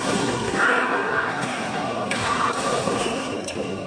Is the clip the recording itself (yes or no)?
no